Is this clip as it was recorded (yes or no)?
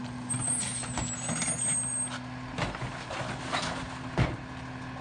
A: yes